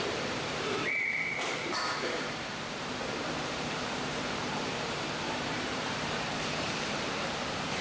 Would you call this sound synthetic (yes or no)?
yes